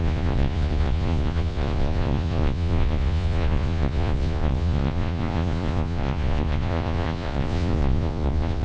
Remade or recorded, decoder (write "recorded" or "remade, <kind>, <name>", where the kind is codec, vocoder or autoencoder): remade, vocoder, Vocos